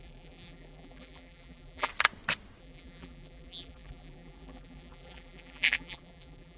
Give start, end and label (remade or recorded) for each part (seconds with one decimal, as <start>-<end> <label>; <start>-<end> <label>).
0.0-1.9 remade; 1.9-2.6 recorded; 2.6-6.6 remade